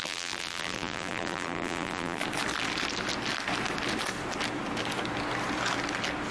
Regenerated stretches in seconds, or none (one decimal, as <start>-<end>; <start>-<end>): 0.0-2.2